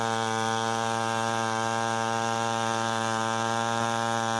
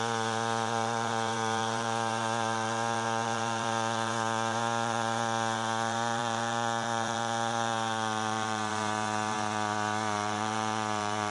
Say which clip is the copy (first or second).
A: second